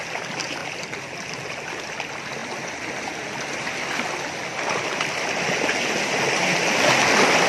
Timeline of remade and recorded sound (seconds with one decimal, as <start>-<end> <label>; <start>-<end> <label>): 0.0-7.5 recorded